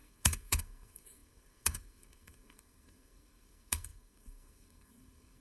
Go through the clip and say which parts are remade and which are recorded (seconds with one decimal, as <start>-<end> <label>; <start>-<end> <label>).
0.0-5.4 remade